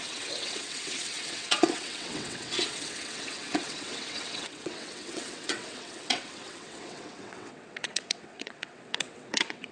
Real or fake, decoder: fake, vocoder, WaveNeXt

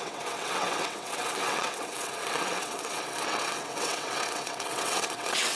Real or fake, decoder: fake, vocoder, WaveNeXt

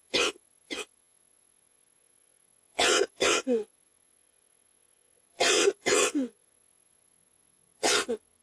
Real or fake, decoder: fake, vocoder, WaveNeXt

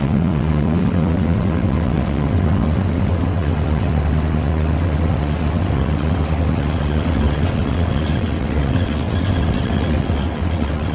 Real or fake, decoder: fake, vocoder, WaveNeXt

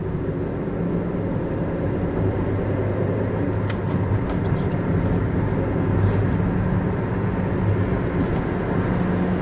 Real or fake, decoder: real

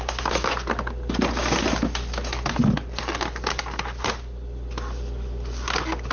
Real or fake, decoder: real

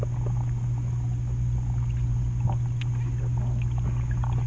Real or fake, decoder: real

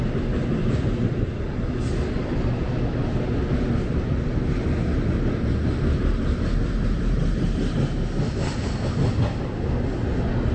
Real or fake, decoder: real